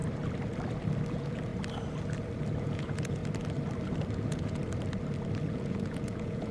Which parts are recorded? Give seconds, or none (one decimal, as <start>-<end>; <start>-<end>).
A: 0.0-1.1; 1.5-2.6; 3.2-4.1; 4.6-5.5